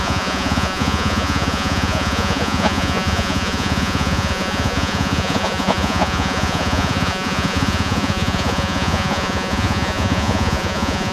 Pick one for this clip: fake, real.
fake